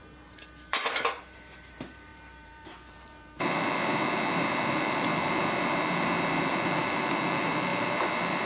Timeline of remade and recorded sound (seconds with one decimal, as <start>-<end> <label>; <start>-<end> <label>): 0.0-8.5 remade